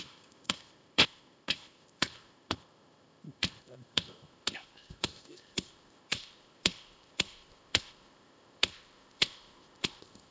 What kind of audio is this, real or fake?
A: fake